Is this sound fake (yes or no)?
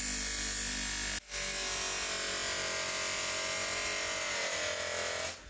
no